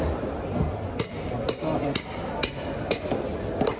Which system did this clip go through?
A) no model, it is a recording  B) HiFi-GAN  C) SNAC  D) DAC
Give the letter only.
A